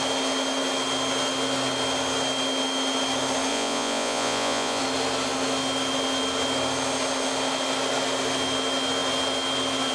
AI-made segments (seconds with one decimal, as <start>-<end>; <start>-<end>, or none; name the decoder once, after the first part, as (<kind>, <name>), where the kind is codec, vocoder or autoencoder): 3.5-4.8 (vocoder, Vocos)